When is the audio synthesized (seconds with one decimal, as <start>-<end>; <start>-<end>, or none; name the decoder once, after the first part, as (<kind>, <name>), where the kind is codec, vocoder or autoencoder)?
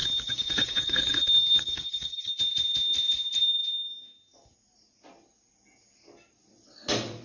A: 0.0-2.3 (codec, DAC)